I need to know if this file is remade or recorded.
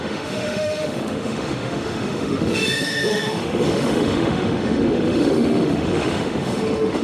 remade